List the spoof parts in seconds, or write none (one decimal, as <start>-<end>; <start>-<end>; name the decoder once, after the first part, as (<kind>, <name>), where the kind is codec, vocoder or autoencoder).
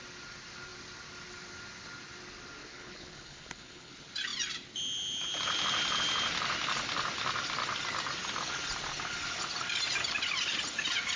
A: 2.6-3.9 (codec, HILCodec)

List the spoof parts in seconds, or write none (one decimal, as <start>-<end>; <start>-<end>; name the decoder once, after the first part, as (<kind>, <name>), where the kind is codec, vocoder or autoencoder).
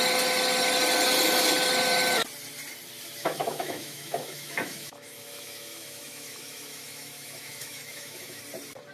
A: 3.2-8.4 (autoencoder, DAC-VAE)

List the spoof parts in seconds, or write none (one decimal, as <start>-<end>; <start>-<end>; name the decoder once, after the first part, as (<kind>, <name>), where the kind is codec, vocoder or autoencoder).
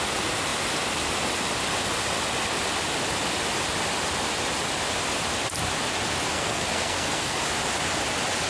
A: 6.3-7.4 (codec, SNAC)